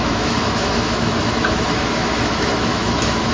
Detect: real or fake fake